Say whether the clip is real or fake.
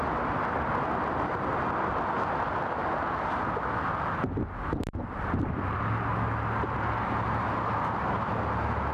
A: real